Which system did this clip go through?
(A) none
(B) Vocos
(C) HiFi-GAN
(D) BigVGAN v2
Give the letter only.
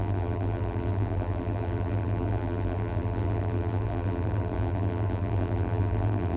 D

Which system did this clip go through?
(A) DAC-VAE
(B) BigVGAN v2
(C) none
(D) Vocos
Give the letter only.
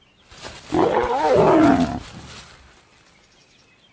C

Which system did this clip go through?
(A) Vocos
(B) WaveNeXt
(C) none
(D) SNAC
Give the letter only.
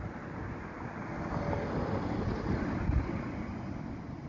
C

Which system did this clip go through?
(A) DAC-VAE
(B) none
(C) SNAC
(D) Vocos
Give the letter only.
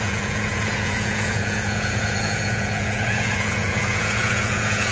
D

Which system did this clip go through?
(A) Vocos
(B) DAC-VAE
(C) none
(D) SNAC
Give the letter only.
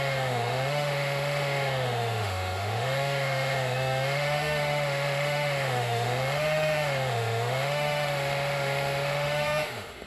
B